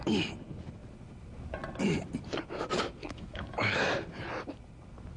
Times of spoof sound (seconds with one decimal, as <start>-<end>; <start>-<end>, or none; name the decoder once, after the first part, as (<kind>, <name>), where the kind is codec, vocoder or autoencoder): 3.0-3.8 (autoencoder, DAC-VAE)